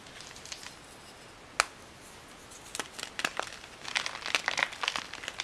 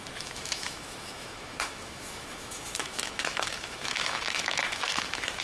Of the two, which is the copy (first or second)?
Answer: second